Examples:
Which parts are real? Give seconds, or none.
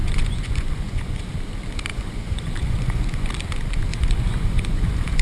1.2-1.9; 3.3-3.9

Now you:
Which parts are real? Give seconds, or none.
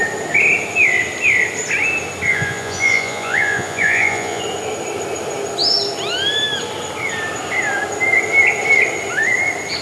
0.0-2.3; 4.4-9.8